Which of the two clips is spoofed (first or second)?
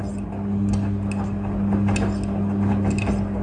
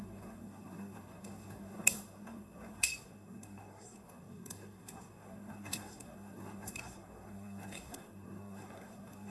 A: second